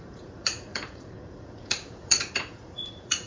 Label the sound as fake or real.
fake